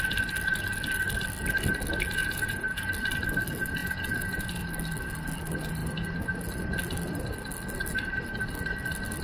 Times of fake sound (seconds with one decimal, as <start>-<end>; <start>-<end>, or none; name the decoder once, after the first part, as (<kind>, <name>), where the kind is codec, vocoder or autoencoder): 2.2-2.9 (vocoder, Vocos); 3.8-4.5